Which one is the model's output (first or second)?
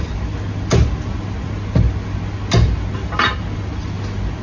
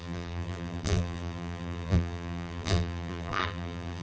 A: second